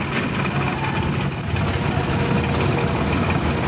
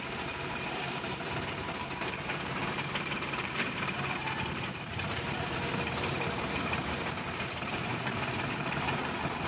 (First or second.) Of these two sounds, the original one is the first